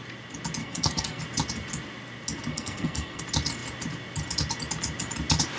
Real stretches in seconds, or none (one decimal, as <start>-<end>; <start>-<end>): 0.0-0.6; 1.2-2.5; 3.2-5.6